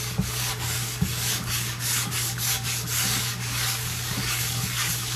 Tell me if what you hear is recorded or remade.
remade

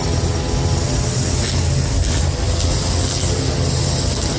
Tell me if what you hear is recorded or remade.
recorded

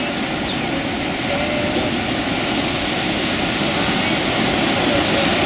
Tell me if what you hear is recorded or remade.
recorded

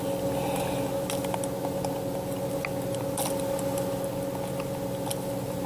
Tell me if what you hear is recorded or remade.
recorded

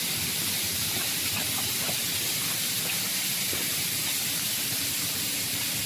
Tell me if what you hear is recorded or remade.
remade